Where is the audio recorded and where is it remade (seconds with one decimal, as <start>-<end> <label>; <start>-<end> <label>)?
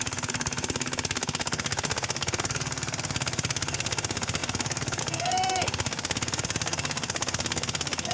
0.0-8.1 remade